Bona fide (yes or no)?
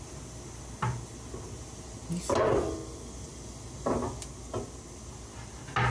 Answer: yes